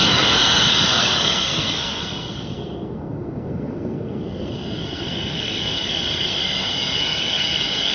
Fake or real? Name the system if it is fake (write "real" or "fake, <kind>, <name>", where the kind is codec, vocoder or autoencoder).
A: fake, codec, SNAC